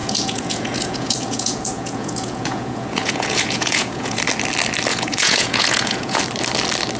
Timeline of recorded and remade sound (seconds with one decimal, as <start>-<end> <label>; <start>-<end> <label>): 0.0-4.2 remade; 4.2-4.9 recorded; 4.9-6.2 remade; 6.2-7.0 recorded